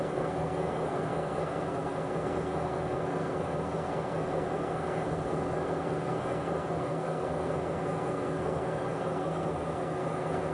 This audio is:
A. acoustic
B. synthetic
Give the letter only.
B